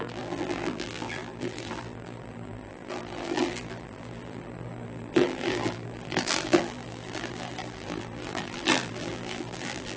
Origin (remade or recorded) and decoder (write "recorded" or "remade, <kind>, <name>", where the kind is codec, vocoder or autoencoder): remade, vocoder, BigVGAN v2